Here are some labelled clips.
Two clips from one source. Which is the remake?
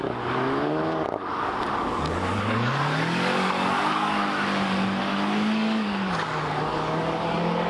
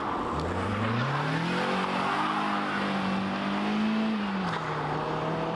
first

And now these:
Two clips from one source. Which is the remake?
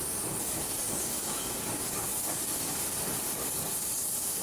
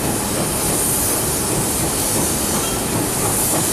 first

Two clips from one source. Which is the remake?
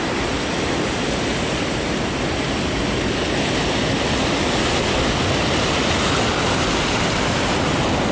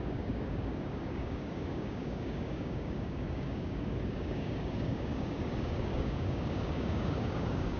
second